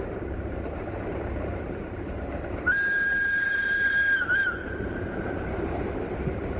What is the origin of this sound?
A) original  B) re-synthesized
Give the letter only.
B